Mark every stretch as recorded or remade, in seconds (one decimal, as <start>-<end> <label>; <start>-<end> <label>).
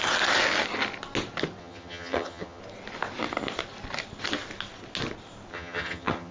0.0-1.6 recorded; 1.6-2.6 remade; 2.6-5.5 recorded; 5.5-6.3 remade